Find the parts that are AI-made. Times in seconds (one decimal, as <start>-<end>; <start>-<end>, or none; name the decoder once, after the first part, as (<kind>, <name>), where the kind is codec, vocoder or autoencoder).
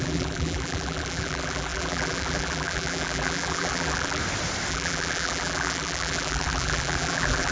0.0-4.2 (vocoder, BigVGAN v2); 4.7-7.5